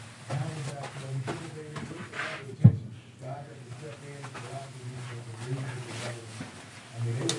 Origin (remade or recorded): recorded